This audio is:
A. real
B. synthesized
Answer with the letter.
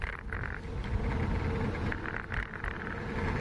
A